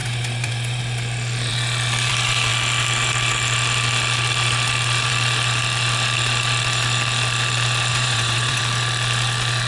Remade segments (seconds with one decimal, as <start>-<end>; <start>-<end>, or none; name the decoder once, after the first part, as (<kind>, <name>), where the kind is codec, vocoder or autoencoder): 0.0-0.8 (vocoder, Vocos); 7.9-8.6